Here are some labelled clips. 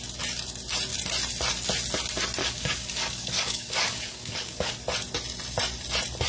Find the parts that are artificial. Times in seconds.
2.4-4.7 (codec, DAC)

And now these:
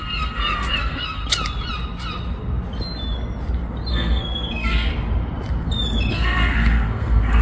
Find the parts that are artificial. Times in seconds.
0.0-1.2 (codec, SNAC); 3.9-4.9; 6.1-7.4

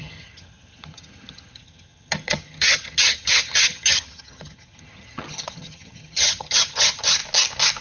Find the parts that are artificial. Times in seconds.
0.0-7.2 (vocoder, HiFi-GAN)

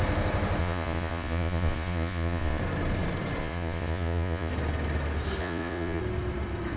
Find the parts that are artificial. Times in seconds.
0.6-2.6 (vocoder, Vocos); 3.4-4.5; 5.4-6.0

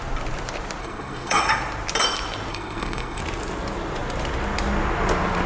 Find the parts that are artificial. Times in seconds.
0.8-1.4 (codec, SNAC); 2.5-3.2

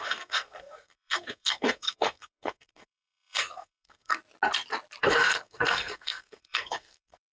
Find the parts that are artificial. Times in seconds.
0.0-4.1 (codec, SNAC); 5.0-7.3

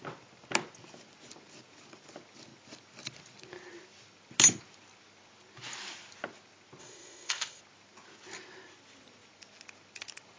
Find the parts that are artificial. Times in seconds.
6.8-7.6 (codec, ZipCodec)